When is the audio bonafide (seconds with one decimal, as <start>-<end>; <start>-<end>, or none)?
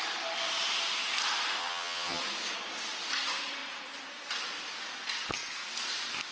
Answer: 0.0-1.6; 2.2-6.3